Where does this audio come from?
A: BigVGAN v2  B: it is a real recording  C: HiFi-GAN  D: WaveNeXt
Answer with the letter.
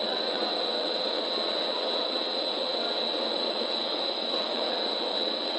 D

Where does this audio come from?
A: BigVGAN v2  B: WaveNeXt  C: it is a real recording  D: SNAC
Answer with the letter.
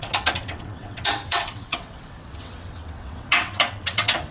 B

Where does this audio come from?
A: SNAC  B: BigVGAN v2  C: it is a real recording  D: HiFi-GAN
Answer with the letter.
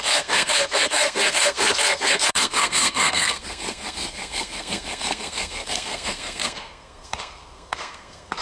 A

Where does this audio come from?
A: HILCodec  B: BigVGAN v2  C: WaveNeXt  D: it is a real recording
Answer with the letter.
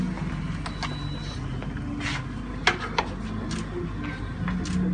D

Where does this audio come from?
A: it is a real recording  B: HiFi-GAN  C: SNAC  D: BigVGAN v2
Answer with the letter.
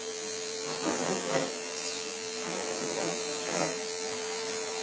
D